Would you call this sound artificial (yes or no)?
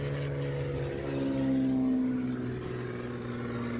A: no